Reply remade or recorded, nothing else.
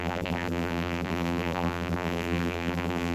remade